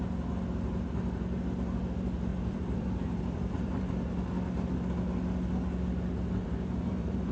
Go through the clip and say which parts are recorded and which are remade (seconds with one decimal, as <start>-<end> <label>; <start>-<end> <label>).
0.0-2.3 recorded; 2.3-3.9 remade; 3.9-6.4 recorded; 6.4-7.3 remade